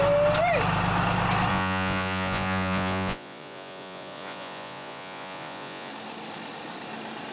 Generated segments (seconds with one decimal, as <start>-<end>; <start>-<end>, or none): 1.5-5.9